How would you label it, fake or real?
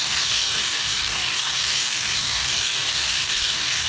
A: fake